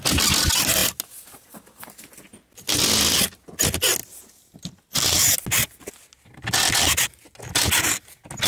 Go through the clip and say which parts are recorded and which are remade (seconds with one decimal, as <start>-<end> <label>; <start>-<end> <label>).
0.0-8.5 recorded